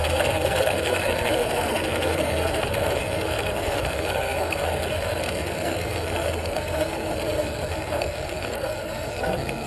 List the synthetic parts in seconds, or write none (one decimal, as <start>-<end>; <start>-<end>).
0.0-9.7